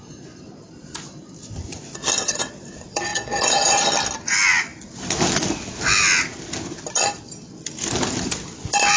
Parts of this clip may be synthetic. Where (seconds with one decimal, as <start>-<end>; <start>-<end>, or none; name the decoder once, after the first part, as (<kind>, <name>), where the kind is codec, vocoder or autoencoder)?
3.1-3.9 (vocoder, Vocos)